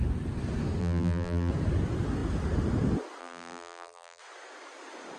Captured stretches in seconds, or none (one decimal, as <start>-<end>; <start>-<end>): 0.0-0.8; 1.5-3.2; 4.2-5.2